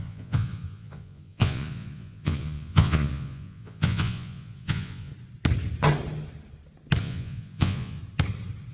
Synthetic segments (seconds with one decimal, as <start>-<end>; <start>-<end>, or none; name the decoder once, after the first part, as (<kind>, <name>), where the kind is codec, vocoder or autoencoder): 0.0-5.1 (vocoder, Vocos); 7.0-8.0